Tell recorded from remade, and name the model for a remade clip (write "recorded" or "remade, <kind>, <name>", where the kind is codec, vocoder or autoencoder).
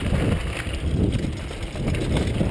recorded